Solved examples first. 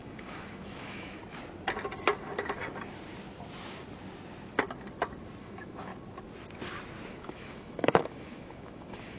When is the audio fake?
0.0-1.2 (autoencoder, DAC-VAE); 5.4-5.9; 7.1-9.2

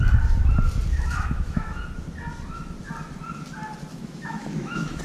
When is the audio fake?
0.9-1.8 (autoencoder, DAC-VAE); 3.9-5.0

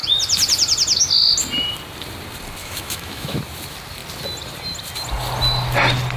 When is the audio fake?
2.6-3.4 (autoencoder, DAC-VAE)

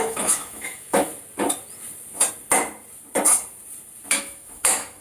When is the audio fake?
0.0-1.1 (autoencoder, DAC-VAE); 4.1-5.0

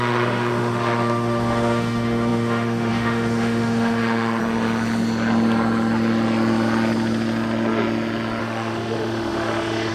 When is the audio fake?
0.0-4.4 (autoencoder, DAC-VAE); 8.4-9.9

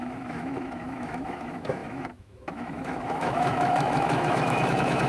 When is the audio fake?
0.0-5.1 (autoencoder, DAC-VAE)

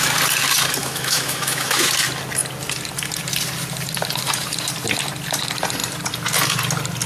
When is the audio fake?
0.8-1.9 (autoencoder, DAC-VAE)